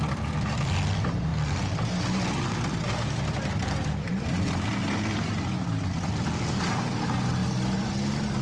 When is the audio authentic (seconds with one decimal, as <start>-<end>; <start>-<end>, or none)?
0.0-1.3; 5.4-8.4